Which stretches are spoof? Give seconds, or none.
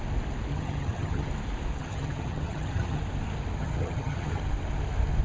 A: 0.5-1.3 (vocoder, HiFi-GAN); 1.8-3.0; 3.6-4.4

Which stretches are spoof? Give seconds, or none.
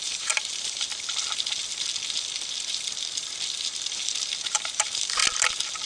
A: 0.0-0.9 (vocoder, BigVGAN v2); 4.4-5.2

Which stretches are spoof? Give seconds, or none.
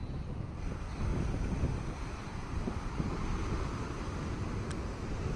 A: 0.0-0.7 (vocoder, BigVGAN v2); 1.1-3.9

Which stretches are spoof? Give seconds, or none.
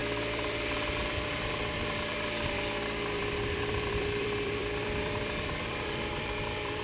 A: 0.0-6.8 (vocoder, BigVGAN v2)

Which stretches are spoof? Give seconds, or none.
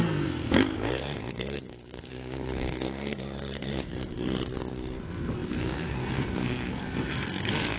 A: 0.0-7.8 (codec, SNAC)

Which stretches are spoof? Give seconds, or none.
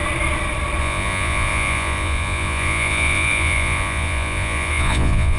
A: 0.8-5.4 (vocoder, Vocos)